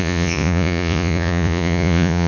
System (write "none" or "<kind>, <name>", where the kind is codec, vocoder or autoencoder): vocoder, Vocos